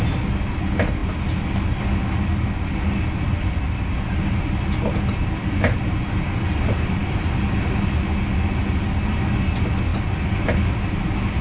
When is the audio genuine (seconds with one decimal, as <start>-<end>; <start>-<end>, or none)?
0.0-11.4

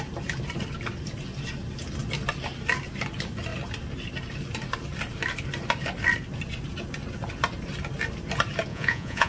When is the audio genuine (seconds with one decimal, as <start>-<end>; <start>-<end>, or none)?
0.0-8.7

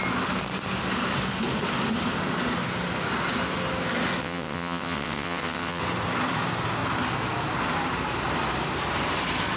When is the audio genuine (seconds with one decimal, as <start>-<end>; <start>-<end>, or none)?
0.0-4.2; 5.8-9.6

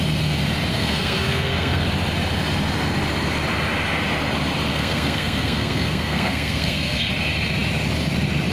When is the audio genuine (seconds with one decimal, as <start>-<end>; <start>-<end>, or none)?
0.0-0.7; 1.8-4.7; 7.1-8.5

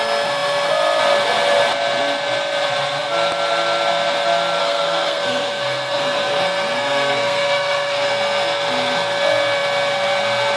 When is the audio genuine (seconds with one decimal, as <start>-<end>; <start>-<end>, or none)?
0.0-4.6; 8.1-10.6

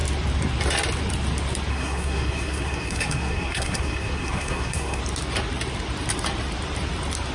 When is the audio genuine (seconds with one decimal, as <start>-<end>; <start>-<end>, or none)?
0.0-1.7; 5.0-7.3

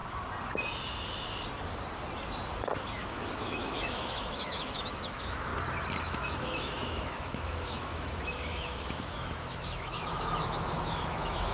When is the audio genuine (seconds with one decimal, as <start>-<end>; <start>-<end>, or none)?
0.0-2.9; 5.5-6.0

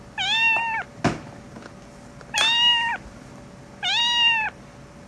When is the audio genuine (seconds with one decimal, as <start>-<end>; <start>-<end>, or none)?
0.0-5.1